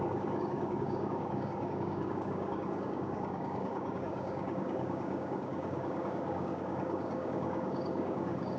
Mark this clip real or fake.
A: fake